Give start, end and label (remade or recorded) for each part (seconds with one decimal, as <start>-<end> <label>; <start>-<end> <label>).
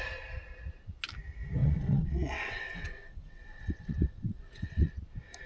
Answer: 0.0-1.6 recorded; 1.6-4.9 remade; 4.9-5.5 recorded